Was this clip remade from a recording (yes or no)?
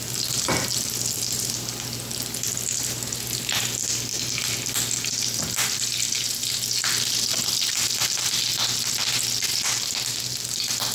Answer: no